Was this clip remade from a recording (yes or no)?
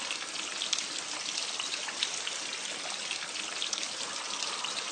no